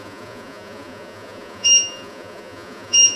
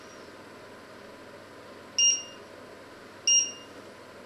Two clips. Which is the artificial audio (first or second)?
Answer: first